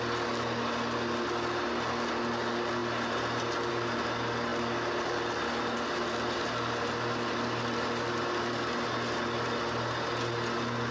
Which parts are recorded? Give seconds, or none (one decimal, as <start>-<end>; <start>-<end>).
0.0-10.9